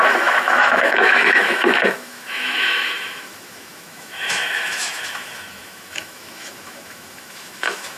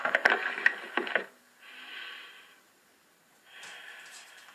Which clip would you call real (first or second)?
second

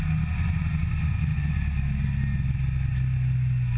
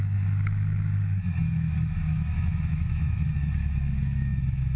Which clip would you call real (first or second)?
first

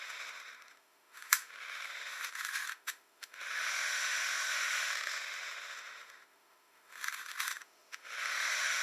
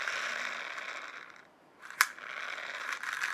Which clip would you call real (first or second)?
second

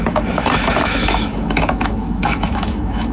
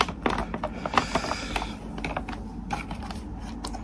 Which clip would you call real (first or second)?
second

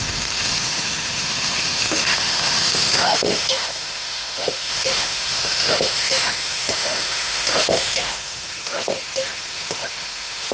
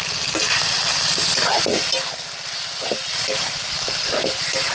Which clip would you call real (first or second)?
second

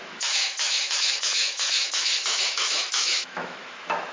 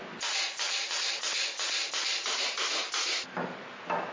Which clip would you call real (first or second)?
second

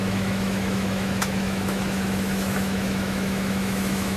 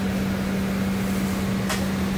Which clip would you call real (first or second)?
second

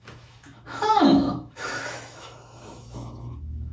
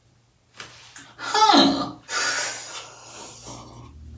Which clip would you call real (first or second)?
second